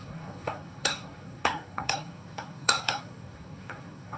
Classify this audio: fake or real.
fake